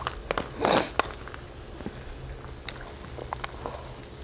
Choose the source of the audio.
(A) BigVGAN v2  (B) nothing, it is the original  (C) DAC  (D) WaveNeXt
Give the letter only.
B